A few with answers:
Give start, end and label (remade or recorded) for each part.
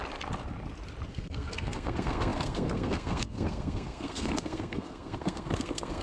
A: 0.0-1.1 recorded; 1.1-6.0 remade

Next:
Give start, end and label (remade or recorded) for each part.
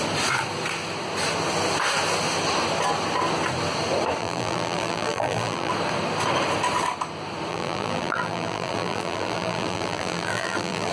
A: 0.0-4.2 recorded; 4.2-5.7 remade; 5.7-7.5 recorded; 7.5-10.9 remade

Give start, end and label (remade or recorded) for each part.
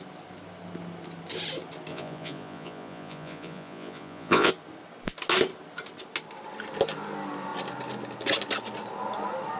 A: 0.0-1.9 recorded; 1.9-4.5 remade; 4.5-9.6 recorded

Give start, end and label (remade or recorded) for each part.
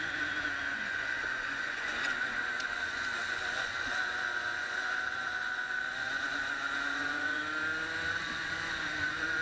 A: 0.0-7.4 remade; 7.4-8.1 recorded; 8.1-9.4 remade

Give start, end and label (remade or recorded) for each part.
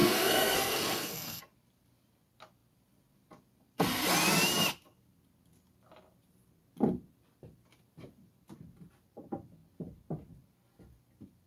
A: 0.0-1.4 remade; 1.4-11.5 recorded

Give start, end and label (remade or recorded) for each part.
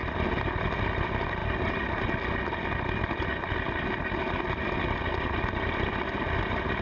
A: 0.0-6.8 recorded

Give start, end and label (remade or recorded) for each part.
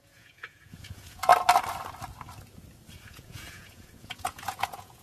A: 0.0-1.3 remade; 1.3-3.0 recorded; 3.0-5.0 remade